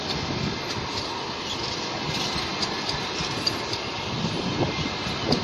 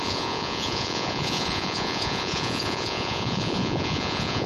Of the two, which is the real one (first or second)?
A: first